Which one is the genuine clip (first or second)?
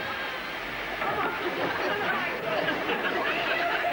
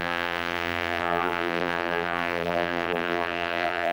first